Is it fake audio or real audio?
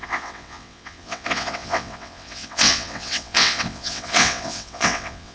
fake